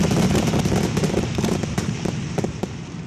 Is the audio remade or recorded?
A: recorded